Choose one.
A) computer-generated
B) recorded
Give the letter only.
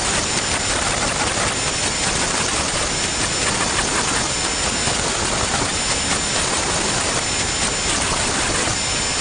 B